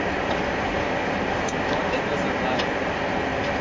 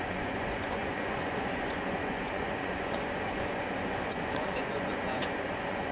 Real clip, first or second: first